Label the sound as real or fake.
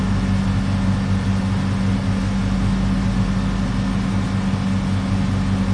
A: real